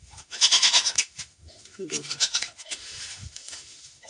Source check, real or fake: fake